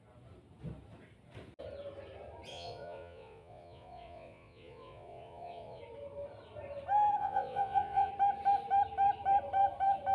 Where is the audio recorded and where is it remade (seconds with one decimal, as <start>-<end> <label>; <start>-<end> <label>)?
0.0-2.5 recorded; 2.5-5.8 remade; 5.8-7.2 recorded; 7.2-8.1 remade; 8.1-10.1 recorded